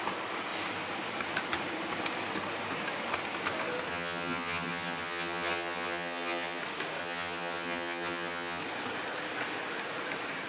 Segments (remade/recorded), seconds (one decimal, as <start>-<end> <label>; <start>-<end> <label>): 0.0-3.9 recorded; 3.9-6.6 remade; 6.6-7.0 recorded; 7.0-8.6 remade; 8.6-10.5 recorded